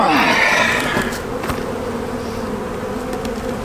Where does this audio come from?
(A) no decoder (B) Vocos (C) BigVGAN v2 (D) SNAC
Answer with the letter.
A